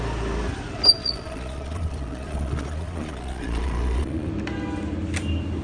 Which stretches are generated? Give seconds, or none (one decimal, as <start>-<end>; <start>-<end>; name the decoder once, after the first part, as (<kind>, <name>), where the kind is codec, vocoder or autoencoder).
1.0-4.3 (vocoder, Vocos)